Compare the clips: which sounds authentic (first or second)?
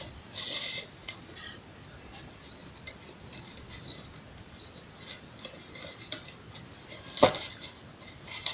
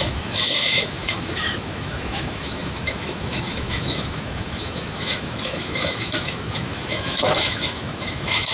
first